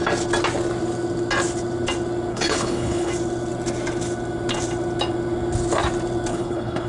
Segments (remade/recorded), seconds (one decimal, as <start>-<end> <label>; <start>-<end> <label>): 0.0-2.3 recorded; 2.3-3.1 remade; 3.1-6.3 recorded; 6.3-6.9 remade